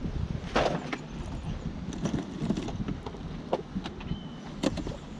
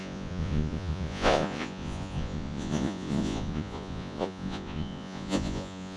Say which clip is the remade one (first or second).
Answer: second